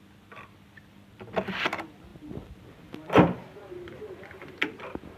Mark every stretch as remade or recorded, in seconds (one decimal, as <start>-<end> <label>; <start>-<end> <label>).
0.0-2.1 remade; 2.1-5.2 recorded